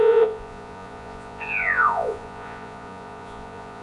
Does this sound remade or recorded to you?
remade